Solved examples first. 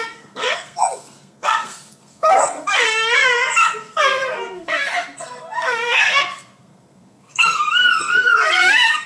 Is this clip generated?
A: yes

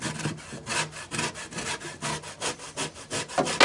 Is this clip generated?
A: no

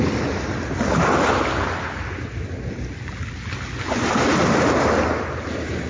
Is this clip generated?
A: no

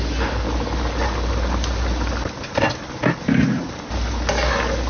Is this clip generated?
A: no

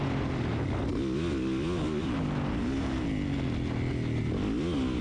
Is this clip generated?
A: no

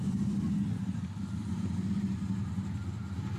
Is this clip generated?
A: no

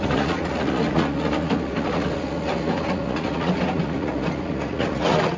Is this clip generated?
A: yes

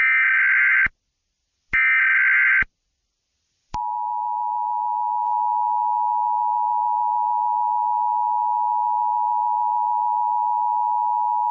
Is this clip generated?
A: no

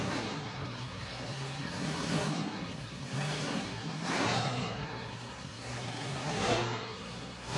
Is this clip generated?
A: yes